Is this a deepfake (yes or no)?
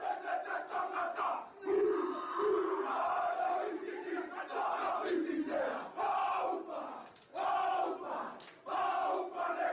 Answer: no